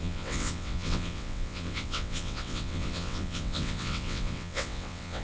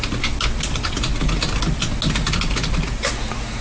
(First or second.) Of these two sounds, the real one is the second